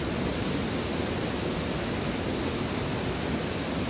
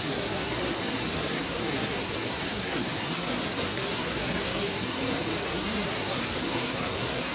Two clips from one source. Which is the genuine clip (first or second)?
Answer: first